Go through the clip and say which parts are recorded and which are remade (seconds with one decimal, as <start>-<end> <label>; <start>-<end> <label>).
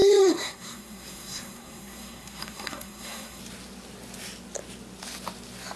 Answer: 0.0-3.4 remade; 3.4-5.8 recorded